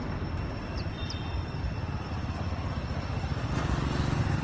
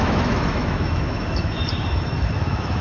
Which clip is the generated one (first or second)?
second